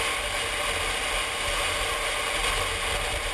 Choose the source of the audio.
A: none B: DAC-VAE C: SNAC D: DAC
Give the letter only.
A